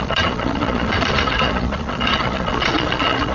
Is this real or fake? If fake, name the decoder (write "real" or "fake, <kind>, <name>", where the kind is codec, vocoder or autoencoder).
fake, vocoder, Vocos